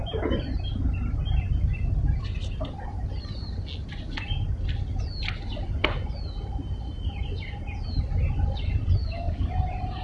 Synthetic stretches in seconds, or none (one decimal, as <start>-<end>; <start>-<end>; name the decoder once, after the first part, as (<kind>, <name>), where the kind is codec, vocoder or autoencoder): 9.0-9.5 (codec, DAC)